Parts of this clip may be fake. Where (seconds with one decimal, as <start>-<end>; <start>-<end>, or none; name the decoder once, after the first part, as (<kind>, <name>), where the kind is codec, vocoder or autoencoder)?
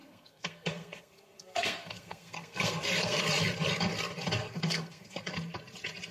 0.0-3.2 (codec, SNAC); 4.4-5.3